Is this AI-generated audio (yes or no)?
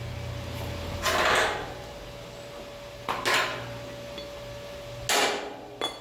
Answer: no